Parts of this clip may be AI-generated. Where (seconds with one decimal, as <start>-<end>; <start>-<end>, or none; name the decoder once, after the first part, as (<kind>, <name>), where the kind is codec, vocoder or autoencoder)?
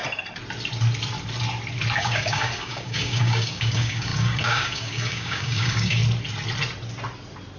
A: 2.0-6.0 (codec, DAC)